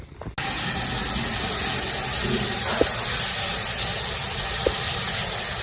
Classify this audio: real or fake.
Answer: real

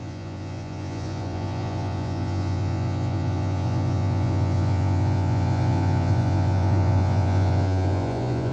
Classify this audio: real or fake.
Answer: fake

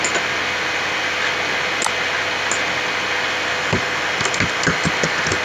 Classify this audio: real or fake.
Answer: real